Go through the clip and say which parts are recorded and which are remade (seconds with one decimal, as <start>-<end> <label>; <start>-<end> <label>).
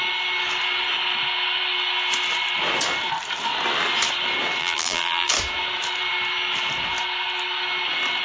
0.0-4.6 recorded; 4.6-5.3 remade; 5.3-8.2 recorded